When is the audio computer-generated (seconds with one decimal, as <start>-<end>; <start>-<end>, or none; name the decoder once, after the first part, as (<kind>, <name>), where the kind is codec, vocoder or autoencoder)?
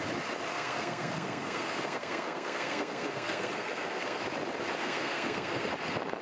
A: 0.5-4.2 (codec, SNAC); 4.8-5.7